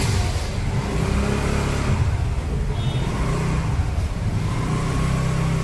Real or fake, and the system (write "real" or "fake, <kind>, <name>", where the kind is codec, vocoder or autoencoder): real